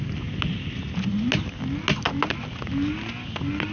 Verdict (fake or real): real